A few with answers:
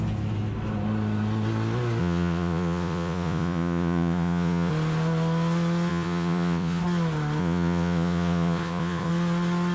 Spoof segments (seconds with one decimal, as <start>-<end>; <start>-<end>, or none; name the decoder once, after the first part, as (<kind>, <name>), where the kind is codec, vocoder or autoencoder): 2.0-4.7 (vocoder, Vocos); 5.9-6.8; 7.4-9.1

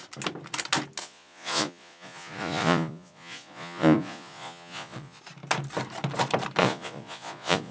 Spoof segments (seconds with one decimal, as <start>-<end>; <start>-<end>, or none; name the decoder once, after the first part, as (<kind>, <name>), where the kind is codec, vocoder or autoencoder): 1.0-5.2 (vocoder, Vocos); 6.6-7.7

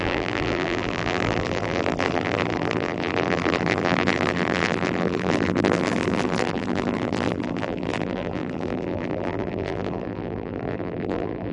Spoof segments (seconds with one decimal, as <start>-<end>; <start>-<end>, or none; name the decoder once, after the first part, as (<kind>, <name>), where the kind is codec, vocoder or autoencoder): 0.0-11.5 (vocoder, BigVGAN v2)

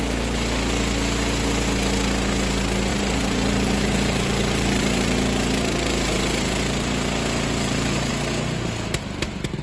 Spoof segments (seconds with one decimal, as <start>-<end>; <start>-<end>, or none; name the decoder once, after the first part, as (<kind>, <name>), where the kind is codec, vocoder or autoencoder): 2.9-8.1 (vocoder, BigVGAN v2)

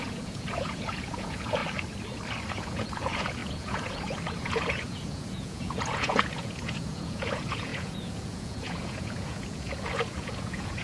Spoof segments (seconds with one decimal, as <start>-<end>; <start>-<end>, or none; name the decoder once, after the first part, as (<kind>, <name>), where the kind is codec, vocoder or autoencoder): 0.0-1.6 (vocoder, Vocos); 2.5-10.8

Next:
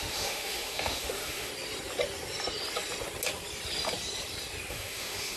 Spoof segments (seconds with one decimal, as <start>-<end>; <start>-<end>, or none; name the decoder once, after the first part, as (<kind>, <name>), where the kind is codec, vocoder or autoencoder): 0.0-1.5 (autoencoder, DAC-VAE); 4.7-5.4

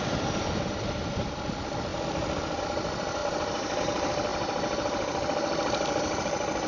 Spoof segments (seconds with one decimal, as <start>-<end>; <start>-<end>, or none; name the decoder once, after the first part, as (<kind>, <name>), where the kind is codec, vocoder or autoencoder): none

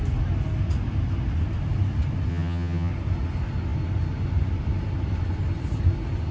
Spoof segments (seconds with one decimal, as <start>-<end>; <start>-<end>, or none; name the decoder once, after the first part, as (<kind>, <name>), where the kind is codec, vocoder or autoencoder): 2.3-2.9 (vocoder, HiFi-GAN)